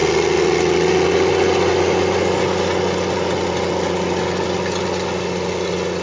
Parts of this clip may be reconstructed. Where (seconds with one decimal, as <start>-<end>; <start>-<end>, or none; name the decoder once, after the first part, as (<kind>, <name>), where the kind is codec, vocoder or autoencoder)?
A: none